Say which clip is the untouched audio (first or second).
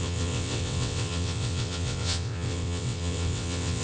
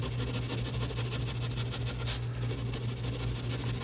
second